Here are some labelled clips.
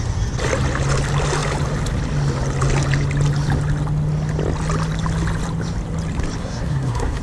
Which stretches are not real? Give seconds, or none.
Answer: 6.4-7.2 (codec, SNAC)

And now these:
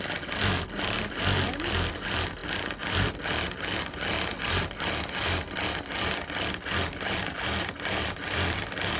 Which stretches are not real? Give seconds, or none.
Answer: none

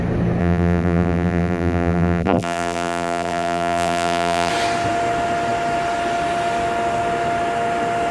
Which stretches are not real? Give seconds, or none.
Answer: 0.4-4.5 (vocoder, BigVGAN v2)

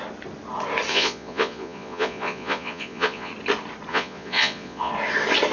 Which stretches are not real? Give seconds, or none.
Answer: 0.9-3.3 (vocoder, Vocos); 3.9-4.9

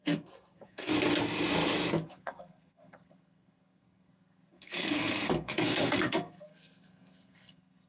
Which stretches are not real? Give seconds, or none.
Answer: 0.0-0.9 (codec, SNAC); 2.1-7.9

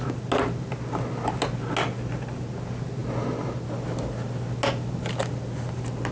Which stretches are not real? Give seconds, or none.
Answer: none

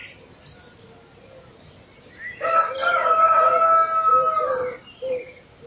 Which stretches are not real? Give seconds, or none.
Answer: 2.8-3.4 (vocoder, BigVGAN v2); 4.1-5.1